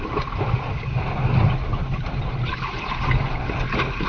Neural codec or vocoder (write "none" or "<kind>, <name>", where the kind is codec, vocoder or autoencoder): none